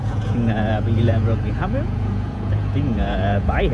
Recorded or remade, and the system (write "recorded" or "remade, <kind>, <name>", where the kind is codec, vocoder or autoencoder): remade, vocoder, Vocos